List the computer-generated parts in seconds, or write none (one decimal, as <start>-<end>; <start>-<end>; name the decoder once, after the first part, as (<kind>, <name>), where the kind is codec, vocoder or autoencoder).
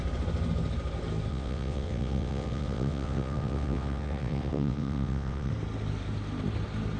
1.3-5.5 (vocoder, WaveNeXt)